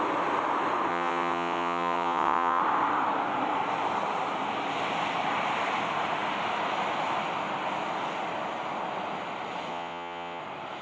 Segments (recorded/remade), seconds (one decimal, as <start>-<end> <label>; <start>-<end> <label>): 0.0-0.9 recorded; 0.9-2.6 remade; 2.6-9.7 recorded; 9.7-10.4 remade; 10.4-10.8 recorded